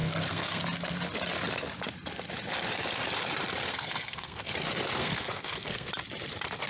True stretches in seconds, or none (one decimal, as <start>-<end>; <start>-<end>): 0.6-3.7; 4.5-5.0; 5.9-6.7